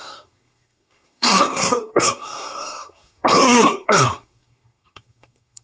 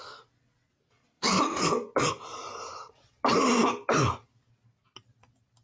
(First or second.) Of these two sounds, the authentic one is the second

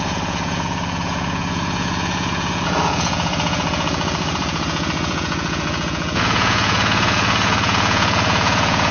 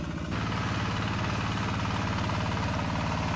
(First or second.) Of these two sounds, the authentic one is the second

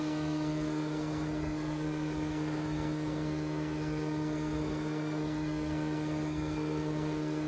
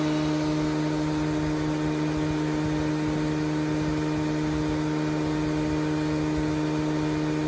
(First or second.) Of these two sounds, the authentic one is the second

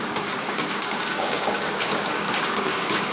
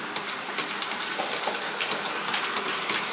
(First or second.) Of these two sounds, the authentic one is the second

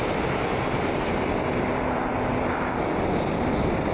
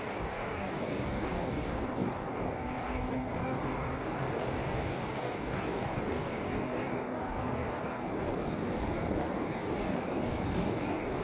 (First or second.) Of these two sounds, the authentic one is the first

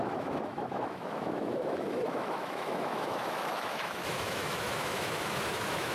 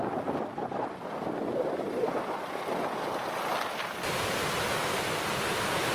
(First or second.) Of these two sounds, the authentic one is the second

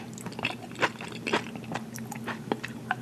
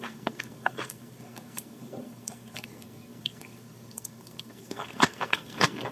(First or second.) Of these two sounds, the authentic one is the first